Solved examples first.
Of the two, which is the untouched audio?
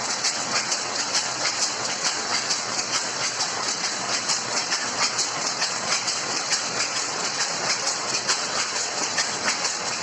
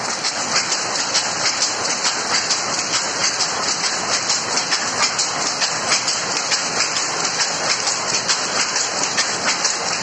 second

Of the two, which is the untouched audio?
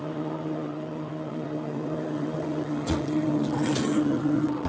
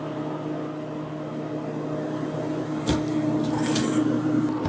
second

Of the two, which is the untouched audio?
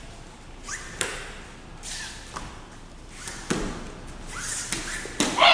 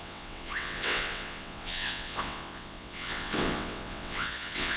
first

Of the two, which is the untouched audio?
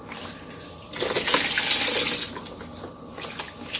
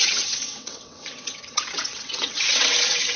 first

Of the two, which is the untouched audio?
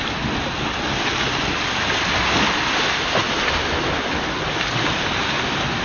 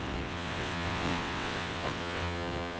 first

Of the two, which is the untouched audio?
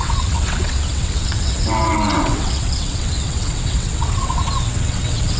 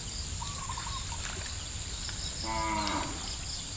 second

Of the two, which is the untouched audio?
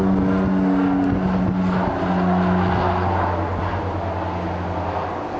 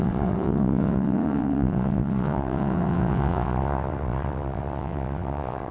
first